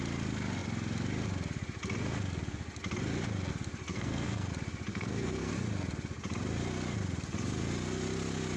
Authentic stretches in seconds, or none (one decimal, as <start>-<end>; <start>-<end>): 0.0-3.9; 4.5-4.9; 5.5-8.6

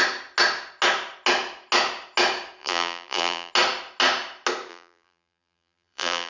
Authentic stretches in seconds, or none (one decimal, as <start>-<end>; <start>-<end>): 0.0-2.6; 3.5-4.7

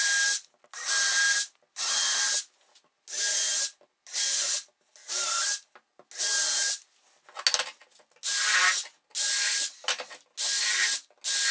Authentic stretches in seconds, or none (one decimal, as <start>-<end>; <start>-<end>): 0.0-11.5

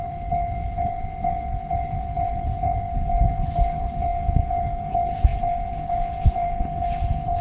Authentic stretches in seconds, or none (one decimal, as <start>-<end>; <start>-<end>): none

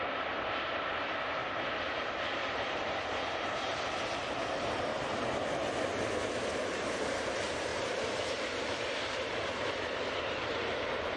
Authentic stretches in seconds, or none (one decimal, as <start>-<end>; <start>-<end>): 1.4-2.4; 4.9-6.5

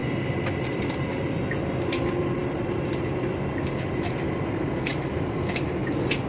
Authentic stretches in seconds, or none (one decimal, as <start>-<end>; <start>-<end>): 0.0-4.9

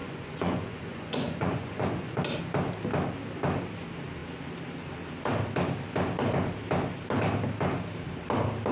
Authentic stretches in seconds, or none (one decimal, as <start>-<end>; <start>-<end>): 2.2-8.7

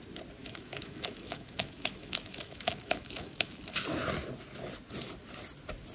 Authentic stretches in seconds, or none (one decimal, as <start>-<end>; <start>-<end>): 0.0-0.4; 3.6-5.9